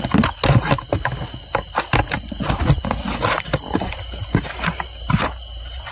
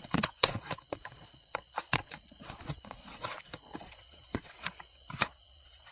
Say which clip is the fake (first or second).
second